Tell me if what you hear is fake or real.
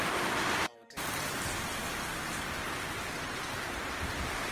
real